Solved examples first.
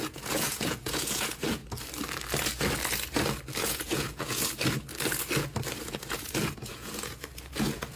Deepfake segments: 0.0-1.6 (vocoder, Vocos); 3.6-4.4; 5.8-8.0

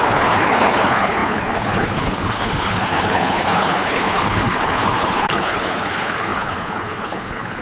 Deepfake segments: 0.0-7.6 (codec, HILCodec)

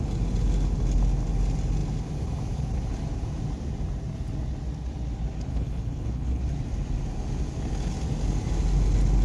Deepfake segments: 5.5-6.4 (codec, HILCodec)

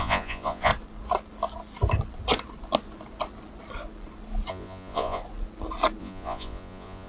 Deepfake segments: 0.0-0.7 (vocoder, Vocos); 4.5-5.2; 6.0-7.1

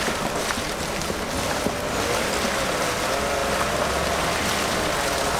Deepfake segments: none

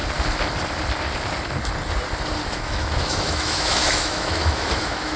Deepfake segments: 2.5-5.2 (autoencoder, DAC-VAE)

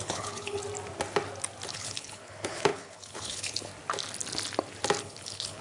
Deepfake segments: 0.0-0.6 (codec, HILCodec); 1.7-3.7; 5.0-5.6